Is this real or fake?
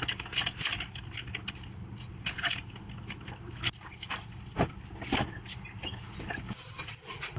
real